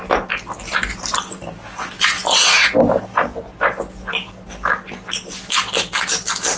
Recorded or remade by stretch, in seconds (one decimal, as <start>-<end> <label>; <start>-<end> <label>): 0.0-6.6 recorded